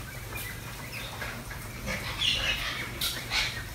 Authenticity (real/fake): fake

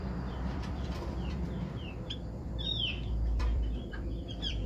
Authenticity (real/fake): fake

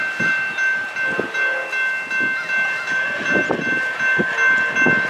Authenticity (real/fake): real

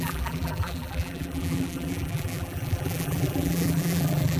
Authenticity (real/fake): fake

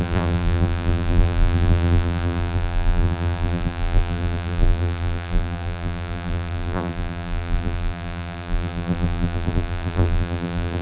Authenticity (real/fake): fake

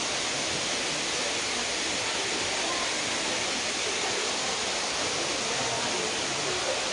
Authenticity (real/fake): real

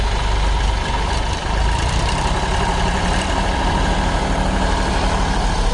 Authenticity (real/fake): fake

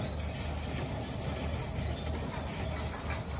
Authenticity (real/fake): real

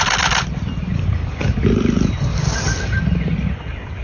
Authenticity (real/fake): real